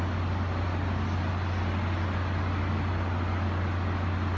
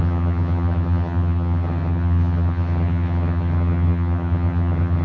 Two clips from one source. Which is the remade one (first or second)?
second